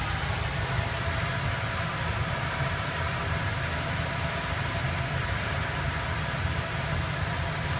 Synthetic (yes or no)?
no